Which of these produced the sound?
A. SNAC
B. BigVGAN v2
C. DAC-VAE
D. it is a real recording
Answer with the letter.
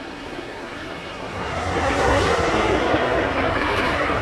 A